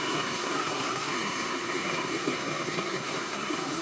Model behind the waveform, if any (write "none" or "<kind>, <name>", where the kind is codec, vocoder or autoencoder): codec, SNAC